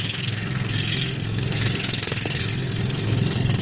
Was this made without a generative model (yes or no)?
no